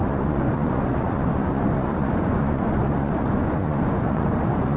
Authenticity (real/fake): fake